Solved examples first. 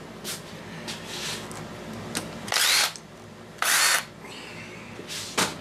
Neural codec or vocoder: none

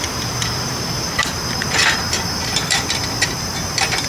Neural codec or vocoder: vocoder, BigVGAN v2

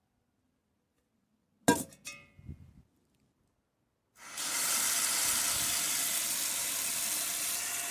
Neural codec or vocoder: none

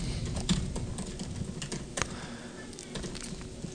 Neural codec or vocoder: none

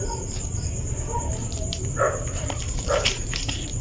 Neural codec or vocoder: vocoder, BigVGAN v2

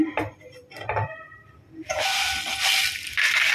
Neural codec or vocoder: none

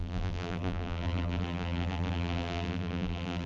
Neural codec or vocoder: vocoder, BigVGAN v2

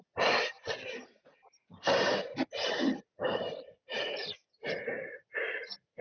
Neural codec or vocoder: vocoder, BigVGAN v2